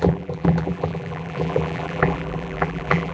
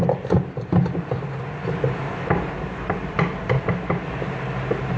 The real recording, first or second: second